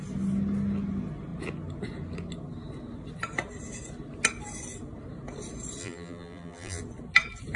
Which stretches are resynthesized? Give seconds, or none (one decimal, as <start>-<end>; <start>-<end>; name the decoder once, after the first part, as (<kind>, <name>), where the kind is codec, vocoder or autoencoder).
5.8-6.8 (vocoder, BigVGAN v2)